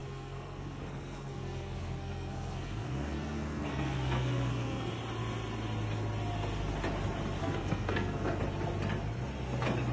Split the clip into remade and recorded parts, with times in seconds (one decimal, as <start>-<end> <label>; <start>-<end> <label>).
0.0-4.9 remade; 4.9-7.4 recorded; 7.4-8.4 remade; 8.4-9.9 recorded

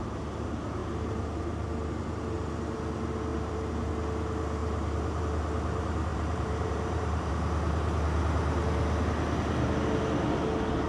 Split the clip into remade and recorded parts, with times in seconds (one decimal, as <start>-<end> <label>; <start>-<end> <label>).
0.0-3.3 recorded; 3.3-3.9 remade; 3.9-4.6 recorded; 4.6-5.2 remade; 5.2-6.1 recorded; 6.1-7.3 remade; 7.3-10.9 recorded

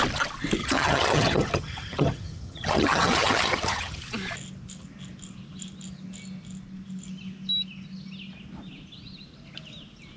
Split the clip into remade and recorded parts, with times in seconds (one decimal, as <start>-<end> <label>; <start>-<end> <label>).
0.0-0.6 recorded; 0.6-4.0 remade; 4.0-10.2 recorded

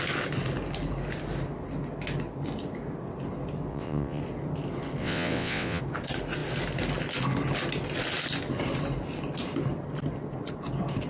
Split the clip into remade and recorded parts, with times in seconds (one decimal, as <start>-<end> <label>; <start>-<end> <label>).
0.0-3.7 recorded; 3.7-4.2 remade; 4.2-5.0 recorded; 5.0-5.8 remade; 5.8-11.1 recorded

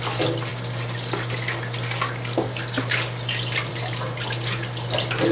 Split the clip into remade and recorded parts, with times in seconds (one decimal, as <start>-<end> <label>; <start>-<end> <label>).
0.0-5.3 recorded

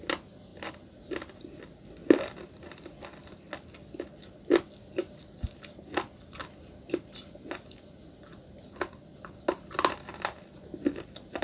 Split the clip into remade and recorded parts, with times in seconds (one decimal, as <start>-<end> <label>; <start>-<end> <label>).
0.0-11.4 recorded